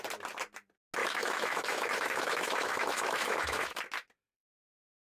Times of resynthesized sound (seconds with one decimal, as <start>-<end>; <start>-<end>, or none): 1.0-3.8